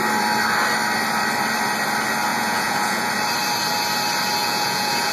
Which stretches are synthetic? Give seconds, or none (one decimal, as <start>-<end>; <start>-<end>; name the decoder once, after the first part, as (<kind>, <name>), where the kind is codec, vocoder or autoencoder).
2.3-3.1 (vocoder, Vocos); 4.4-5.1